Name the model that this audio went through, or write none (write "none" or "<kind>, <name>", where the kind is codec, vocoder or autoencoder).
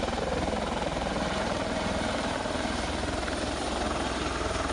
vocoder, BigVGAN v2